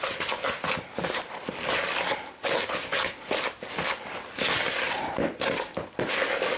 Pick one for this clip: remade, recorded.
recorded